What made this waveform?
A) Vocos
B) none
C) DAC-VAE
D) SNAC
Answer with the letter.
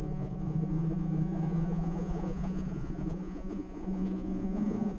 A